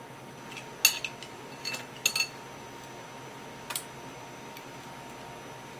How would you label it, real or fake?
real